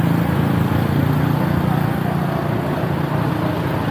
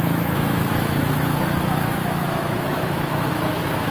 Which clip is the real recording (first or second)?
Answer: first